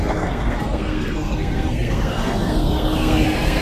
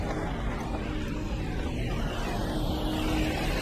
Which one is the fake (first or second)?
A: first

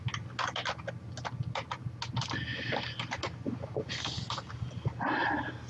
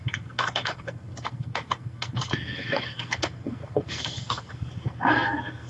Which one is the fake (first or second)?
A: second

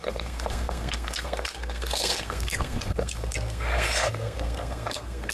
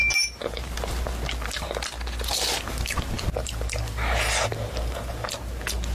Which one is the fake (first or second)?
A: first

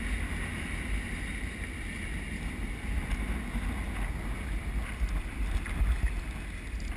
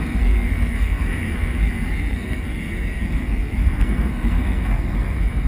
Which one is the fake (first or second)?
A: second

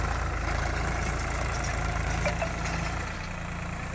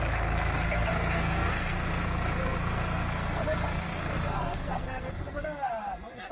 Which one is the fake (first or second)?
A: second